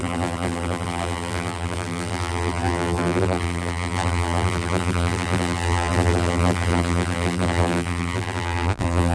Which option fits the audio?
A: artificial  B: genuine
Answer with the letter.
A